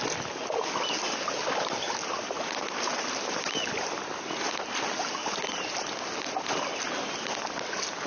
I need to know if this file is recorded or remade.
recorded